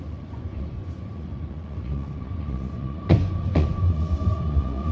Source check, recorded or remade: remade